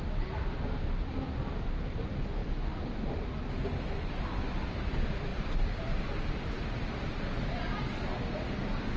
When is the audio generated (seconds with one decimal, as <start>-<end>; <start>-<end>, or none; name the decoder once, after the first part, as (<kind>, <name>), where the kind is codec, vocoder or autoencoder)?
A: 5.3-7.1 (vocoder, BigVGAN v2)